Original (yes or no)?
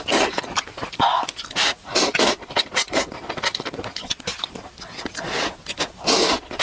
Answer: yes